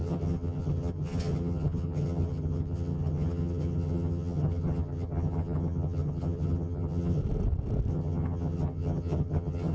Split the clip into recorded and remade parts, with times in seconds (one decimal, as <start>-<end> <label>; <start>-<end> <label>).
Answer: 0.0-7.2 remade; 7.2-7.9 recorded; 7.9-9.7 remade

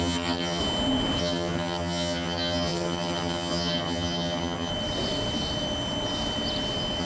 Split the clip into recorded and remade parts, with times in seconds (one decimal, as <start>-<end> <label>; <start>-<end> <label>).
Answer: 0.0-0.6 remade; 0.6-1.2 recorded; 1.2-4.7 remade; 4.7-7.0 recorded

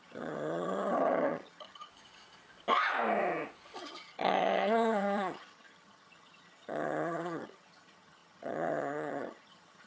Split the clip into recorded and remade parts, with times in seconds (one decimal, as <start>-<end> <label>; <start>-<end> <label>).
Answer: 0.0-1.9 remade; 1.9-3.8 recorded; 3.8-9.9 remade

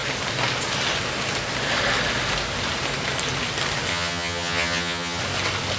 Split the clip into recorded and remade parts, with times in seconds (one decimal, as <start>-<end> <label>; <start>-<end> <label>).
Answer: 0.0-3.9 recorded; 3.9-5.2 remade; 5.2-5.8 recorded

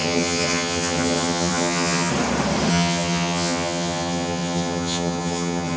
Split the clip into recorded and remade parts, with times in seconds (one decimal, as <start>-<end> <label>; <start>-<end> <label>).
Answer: 0.0-2.1 remade; 2.1-2.7 recorded; 2.7-5.8 remade

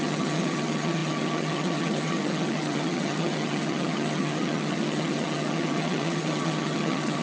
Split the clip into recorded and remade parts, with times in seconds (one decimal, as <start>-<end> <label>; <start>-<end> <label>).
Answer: 0.0-7.2 remade

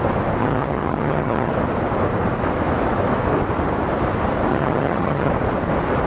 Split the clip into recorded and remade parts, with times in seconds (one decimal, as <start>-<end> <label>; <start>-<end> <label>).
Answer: 0.0-0.4 recorded; 0.4-1.5 remade; 1.5-4.5 recorded; 4.5-5.3 remade; 5.3-6.1 recorded